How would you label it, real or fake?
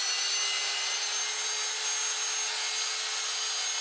real